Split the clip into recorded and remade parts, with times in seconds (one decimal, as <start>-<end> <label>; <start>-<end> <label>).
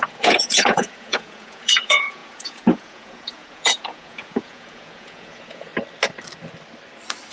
0.0-5.7 remade; 5.7-7.3 recorded